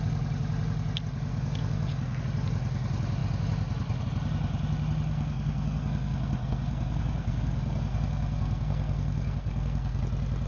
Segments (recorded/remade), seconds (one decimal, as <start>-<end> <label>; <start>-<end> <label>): 0.0-1.3 recorded; 1.3-2.2 remade; 2.2-5.1 recorded; 5.1-10.0 remade; 10.0-10.5 recorded